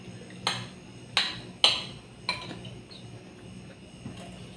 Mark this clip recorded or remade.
recorded